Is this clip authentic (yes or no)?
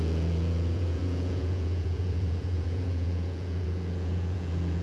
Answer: no